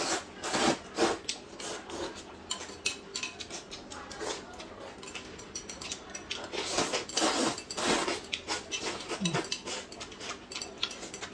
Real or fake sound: real